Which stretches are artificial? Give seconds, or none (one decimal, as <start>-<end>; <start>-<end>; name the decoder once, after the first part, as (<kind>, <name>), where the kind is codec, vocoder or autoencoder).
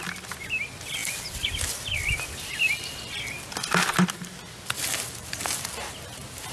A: none